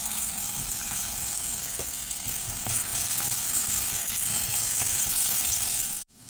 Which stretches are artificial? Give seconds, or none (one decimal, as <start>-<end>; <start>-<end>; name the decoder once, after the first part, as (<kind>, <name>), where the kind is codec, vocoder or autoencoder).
0.0-6.3 (codec, SNAC)